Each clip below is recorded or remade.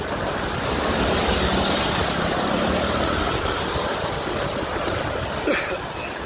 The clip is recorded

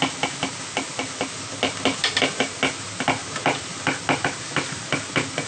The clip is recorded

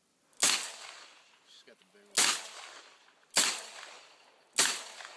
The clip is recorded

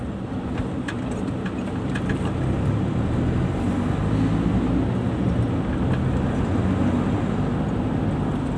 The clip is recorded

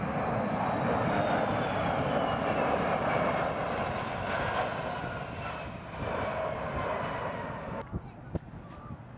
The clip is recorded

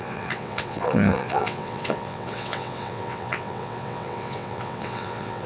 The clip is remade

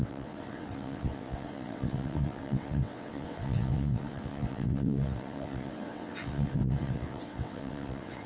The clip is remade